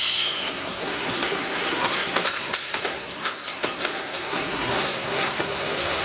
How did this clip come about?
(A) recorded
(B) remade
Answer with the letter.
B